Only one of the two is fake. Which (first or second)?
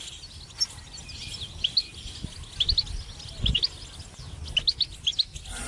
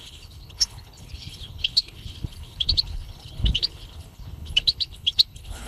second